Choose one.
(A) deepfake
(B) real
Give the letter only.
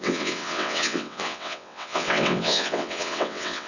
A